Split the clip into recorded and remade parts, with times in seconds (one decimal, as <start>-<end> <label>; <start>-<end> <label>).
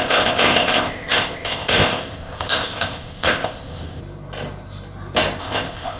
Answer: 0.0-4.0 remade; 4.0-5.4 recorded; 5.4-6.0 remade